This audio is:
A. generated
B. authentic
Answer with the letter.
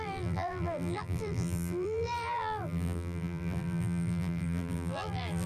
A